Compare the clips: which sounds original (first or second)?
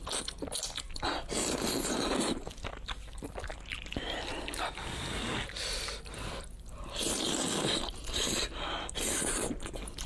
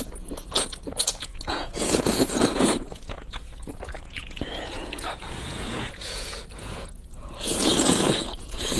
first